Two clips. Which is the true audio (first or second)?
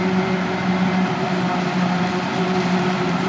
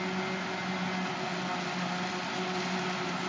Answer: second